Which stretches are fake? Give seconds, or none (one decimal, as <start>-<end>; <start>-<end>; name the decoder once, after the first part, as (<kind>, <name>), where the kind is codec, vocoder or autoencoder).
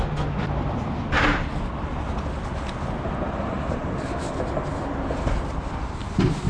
none